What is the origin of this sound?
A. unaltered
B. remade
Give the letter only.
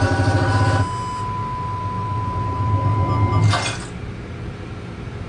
A